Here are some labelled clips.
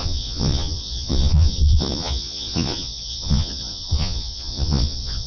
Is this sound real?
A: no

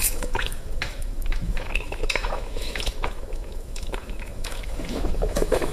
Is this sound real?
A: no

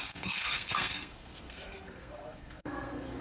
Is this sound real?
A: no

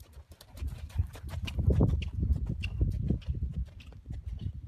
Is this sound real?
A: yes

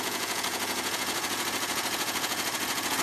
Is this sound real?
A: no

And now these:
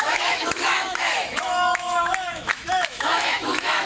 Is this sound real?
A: no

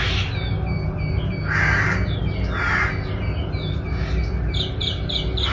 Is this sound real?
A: yes